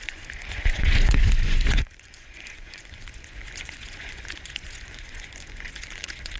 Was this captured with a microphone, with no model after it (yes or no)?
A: no